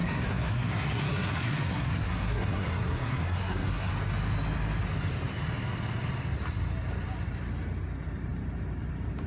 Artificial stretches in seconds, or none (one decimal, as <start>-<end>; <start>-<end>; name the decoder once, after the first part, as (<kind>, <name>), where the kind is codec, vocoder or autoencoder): 0.0-3.9 (codec, SNAC)